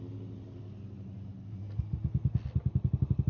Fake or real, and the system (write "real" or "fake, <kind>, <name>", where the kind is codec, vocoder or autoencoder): real